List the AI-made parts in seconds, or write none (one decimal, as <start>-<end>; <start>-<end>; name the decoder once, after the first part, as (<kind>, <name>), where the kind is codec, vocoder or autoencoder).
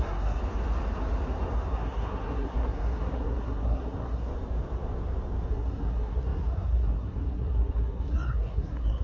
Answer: 0.0-0.4 (codec, SNAC); 1.8-4.3; 5.5-9.0